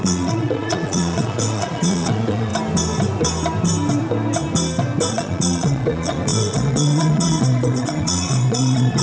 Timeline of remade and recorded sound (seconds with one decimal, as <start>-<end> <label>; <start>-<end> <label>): 0.0-2.5 remade; 2.5-5.1 recorded; 5.1-9.0 remade